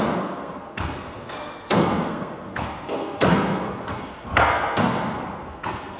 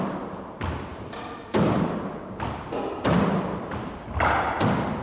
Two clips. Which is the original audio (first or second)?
second